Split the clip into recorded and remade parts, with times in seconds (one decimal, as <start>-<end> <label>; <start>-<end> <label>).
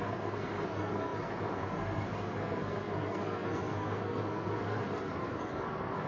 0.0-6.1 remade